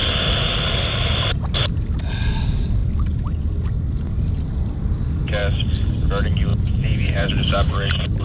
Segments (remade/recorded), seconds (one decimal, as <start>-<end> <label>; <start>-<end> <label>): 0.0-6.5 recorded; 6.5-7.3 remade; 7.3-8.2 recorded